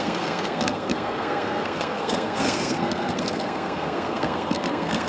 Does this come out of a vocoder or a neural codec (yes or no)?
yes